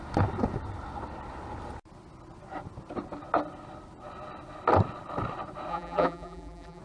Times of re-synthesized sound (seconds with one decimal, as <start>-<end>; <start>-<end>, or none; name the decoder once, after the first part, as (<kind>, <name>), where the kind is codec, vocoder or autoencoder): 5.7-6.8 (vocoder, BigVGAN v2)